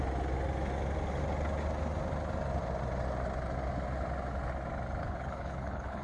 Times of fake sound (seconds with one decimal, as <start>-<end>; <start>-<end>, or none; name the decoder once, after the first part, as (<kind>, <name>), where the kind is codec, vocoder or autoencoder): 5.0-6.0 (codec, HILCodec)